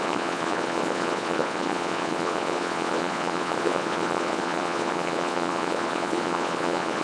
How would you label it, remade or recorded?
remade